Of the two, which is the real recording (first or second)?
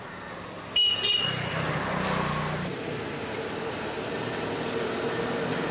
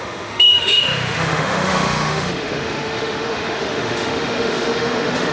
first